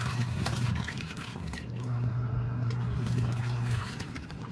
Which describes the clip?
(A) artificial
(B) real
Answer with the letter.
A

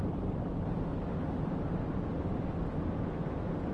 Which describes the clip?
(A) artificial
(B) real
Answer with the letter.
B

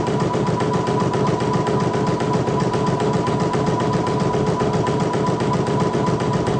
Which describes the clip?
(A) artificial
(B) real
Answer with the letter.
B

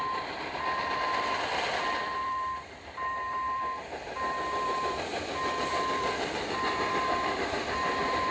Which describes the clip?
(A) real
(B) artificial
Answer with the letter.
B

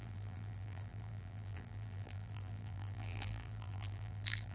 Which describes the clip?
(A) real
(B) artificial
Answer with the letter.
B